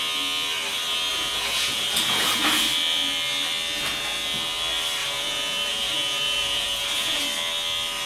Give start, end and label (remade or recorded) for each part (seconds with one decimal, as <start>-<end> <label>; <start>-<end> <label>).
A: 0.0-1.1 recorded; 1.1-2.6 remade; 2.6-5.0 recorded; 5.0-7.2 remade; 7.2-8.1 recorded

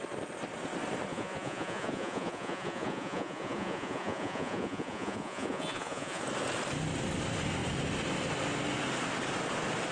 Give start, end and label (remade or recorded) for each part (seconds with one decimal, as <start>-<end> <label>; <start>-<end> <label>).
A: 0.0-1.1 recorded; 1.1-6.2 remade; 6.2-9.9 recorded